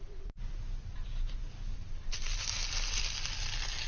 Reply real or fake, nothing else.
real